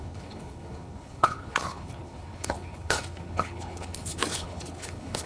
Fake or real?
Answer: fake